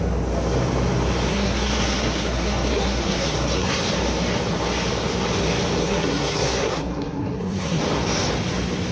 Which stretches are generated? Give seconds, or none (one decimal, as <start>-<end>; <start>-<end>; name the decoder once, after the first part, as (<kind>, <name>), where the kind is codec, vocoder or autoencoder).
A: 1.3-3.8 (codec, SNAC); 5.8-7.8